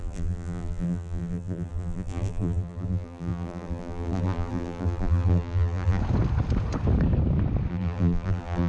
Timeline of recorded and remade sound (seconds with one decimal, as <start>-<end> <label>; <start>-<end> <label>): 0.0-6.0 remade; 6.0-7.7 recorded; 7.7-8.7 remade